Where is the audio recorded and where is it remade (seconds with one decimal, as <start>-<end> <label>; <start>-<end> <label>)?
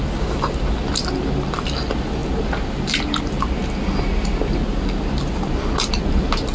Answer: 0.0-6.5 recorded